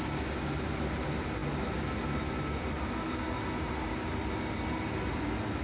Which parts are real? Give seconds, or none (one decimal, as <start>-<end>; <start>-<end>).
0.0-5.6